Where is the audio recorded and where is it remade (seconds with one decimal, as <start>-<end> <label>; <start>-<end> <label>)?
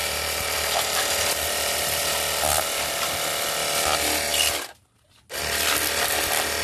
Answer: 0.0-2.0 remade; 2.0-2.5 recorded; 2.5-3.3 remade; 3.3-6.6 recorded